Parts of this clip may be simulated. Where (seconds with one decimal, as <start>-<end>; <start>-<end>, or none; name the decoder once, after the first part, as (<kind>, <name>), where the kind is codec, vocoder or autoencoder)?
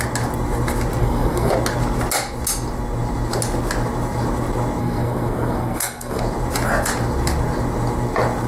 1.0-1.5 (codec, SNAC); 4.8-6.2